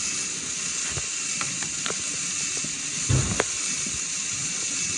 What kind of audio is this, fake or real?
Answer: real